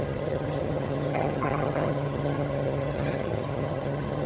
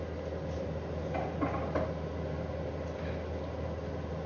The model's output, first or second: first